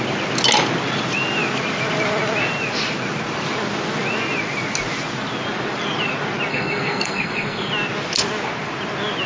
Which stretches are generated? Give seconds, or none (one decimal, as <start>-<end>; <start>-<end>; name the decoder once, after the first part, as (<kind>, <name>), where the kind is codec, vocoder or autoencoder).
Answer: 6.5-7.7 (codec, SNAC)